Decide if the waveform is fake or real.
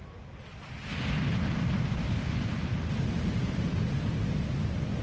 real